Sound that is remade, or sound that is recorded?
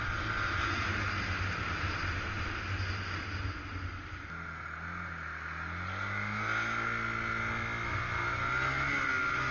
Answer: recorded